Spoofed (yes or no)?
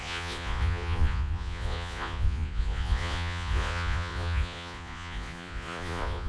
yes